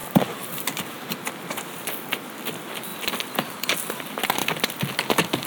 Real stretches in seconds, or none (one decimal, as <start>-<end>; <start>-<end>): 1.8-4.4; 4.9-5.5